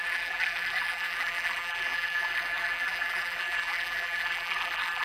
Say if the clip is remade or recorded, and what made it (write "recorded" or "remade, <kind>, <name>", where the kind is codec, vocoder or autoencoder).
remade, vocoder, BigVGAN v2